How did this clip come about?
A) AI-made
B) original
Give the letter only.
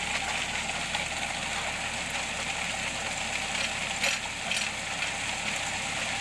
B